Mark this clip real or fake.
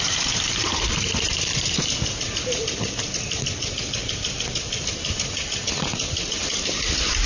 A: real